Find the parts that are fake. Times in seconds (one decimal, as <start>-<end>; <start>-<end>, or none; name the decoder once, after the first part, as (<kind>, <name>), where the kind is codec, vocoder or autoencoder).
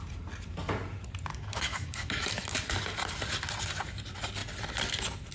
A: 1.3-2.3 (codec, DAC)